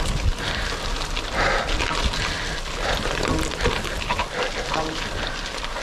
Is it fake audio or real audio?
real